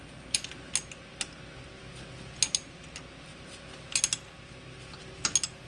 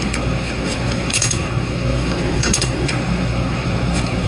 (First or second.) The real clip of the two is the first